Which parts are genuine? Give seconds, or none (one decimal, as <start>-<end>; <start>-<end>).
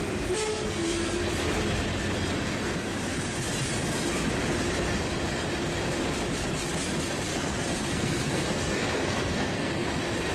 0.0-0.5; 1.2-2.4; 2.9-7.3; 9.9-10.3